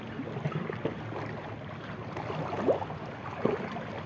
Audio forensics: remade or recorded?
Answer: recorded